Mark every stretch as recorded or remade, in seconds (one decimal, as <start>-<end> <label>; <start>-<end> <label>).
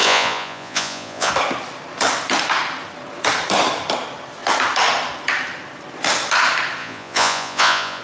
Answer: 0.0-1.3 remade; 1.3-6.8 recorded; 6.8-8.0 remade